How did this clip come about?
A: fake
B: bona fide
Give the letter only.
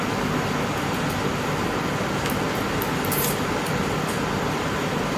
B